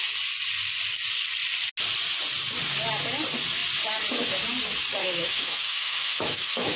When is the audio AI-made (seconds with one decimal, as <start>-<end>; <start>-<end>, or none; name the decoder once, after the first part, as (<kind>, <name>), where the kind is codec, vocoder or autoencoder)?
5.0-6.8 (autoencoder, DAC-VAE)